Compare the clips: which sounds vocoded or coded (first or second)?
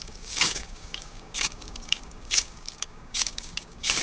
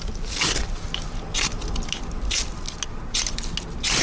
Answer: first